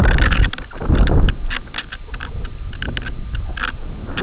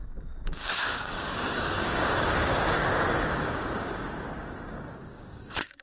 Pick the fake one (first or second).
second